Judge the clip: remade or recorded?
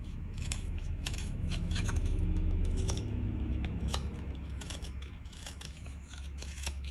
remade